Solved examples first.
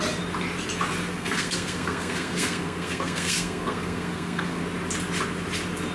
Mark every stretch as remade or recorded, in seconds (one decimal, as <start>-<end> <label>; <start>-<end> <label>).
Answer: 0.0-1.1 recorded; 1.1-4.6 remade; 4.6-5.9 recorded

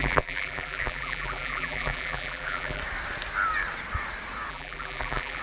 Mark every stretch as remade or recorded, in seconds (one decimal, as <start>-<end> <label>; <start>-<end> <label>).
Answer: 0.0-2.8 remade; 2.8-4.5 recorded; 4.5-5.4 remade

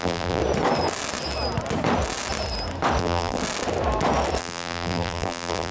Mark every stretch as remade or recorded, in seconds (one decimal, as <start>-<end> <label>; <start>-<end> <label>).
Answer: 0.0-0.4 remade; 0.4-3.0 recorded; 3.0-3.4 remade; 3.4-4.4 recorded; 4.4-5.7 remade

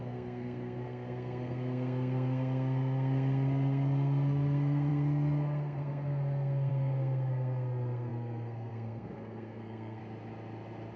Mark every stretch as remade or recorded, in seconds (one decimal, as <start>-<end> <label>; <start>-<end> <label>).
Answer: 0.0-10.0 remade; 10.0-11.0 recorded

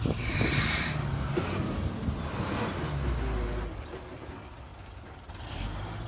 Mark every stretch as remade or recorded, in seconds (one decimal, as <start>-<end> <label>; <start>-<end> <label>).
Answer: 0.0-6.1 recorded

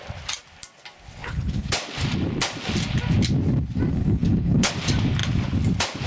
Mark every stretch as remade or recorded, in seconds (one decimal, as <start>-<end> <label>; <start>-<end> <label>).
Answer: 0.0-1.2 recorded; 1.2-1.7 remade; 1.7-4.0 recorded; 4.0-4.7 remade; 4.7-6.1 recorded